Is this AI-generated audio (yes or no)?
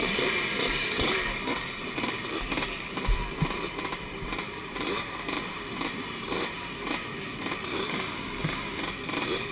yes